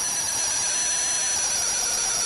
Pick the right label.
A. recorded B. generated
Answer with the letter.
B